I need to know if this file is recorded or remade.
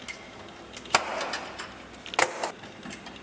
recorded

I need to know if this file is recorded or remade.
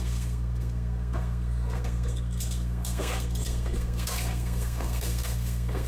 remade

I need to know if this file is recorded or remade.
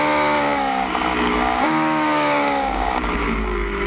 remade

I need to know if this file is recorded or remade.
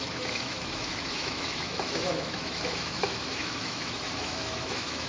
remade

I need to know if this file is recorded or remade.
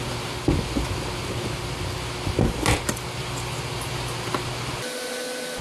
recorded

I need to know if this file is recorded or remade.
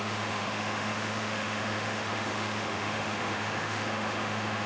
remade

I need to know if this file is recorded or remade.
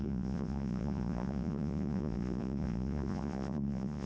remade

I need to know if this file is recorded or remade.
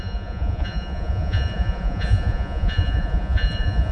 remade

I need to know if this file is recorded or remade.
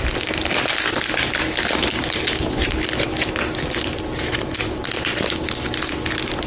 recorded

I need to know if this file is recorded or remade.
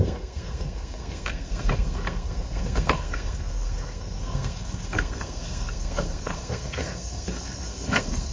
remade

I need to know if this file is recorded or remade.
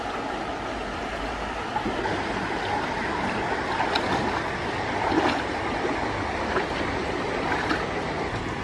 recorded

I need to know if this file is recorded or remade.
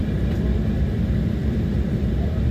remade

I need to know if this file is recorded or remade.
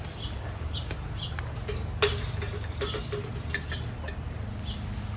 recorded